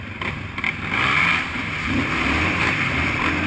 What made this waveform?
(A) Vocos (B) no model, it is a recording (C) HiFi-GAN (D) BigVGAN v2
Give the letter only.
D